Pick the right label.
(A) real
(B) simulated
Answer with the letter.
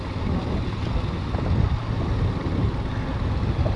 A